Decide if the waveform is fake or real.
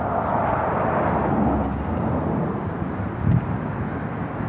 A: real